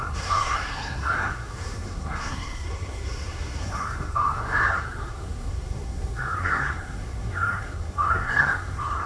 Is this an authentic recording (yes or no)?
no